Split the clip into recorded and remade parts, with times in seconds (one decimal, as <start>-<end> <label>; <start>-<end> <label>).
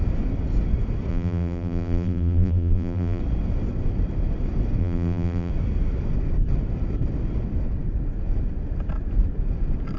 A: 0.0-1.1 recorded; 1.1-3.2 remade; 3.2-4.8 recorded; 4.8-5.5 remade; 5.5-10.0 recorded